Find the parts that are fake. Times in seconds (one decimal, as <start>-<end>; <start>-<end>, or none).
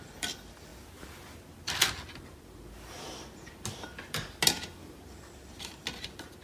none